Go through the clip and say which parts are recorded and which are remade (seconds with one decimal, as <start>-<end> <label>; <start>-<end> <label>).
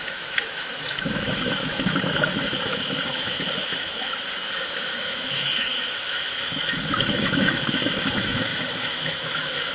0.0-9.7 remade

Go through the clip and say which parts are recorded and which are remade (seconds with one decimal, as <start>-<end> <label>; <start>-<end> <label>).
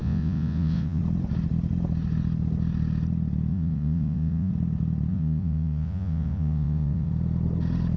0.0-1.0 remade; 1.0-3.5 recorded; 3.5-4.5 remade; 4.5-5.1 recorded; 5.1-7.1 remade; 7.1-8.0 recorded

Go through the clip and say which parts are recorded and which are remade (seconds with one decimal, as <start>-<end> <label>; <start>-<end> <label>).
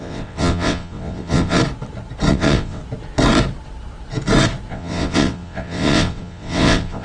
0.0-1.6 remade; 1.6-2.3 recorded; 2.3-2.8 remade; 2.8-4.7 recorded; 4.7-7.0 remade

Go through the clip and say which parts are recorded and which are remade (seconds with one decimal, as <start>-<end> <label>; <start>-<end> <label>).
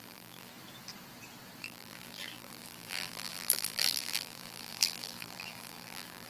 0.0-0.5 remade; 0.5-1.6 recorded; 1.6-6.3 remade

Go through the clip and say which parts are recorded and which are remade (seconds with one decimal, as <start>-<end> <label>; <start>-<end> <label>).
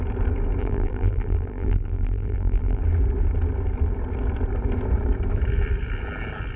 0.0-0.6 recorded; 0.6-2.8 remade; 2.8-6.6 recorded